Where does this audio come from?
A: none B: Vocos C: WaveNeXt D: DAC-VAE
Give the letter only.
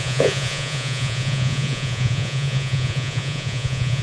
B